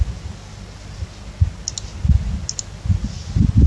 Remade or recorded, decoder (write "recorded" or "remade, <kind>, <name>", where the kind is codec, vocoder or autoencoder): recorded